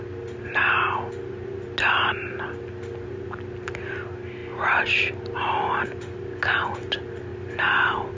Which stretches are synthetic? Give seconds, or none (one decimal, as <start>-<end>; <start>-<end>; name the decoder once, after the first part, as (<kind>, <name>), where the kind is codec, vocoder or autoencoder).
none